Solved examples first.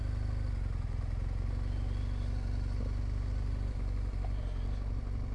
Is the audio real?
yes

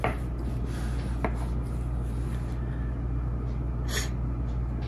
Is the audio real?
yes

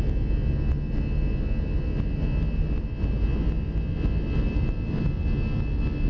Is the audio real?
yes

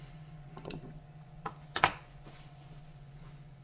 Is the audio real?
no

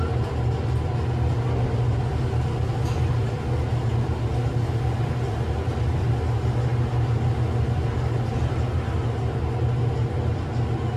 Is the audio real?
yes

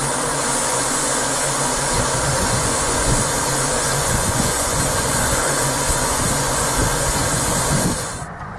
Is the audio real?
no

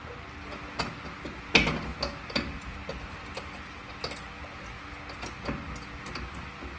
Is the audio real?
yes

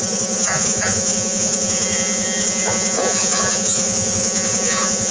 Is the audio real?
no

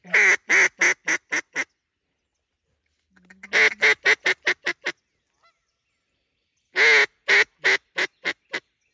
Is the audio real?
yes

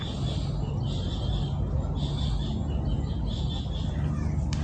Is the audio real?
yes